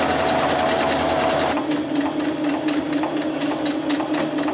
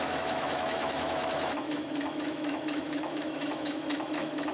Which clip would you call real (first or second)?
first